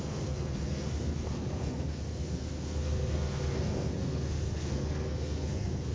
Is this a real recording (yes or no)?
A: no